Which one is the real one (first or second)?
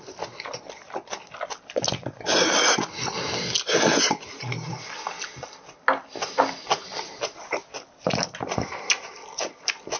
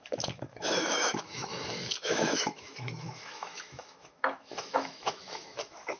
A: first